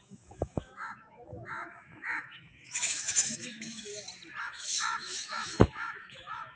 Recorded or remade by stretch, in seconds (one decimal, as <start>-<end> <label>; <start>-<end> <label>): 0.0-3.9 remade; 3.9-4.4 recorded; 4.4-6.6 remade

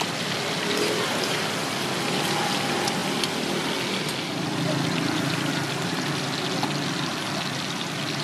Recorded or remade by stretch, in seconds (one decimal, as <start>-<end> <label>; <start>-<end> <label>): 0.0-8.2 recorded

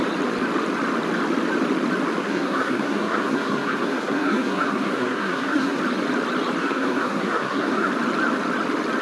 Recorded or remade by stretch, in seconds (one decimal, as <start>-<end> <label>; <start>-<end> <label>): 0.0-2.2 recorded; 2.2-5.8 remade; 5.8-6.6 recorded; 6.6-7.9 remade; 7.9-9.0 recorded

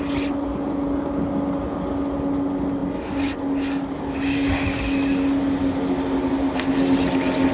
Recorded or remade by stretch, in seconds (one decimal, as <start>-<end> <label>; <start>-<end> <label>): 0.0-7.5 recorded

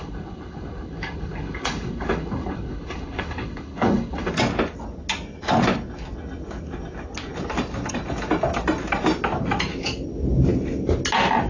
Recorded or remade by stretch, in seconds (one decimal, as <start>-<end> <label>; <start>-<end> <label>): 0.0-4.3 remade; 4.3-11.5 recorded